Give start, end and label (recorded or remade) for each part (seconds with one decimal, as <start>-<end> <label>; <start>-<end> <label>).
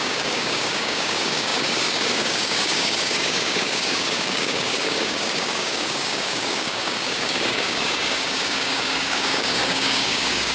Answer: 0.0-10.5 remade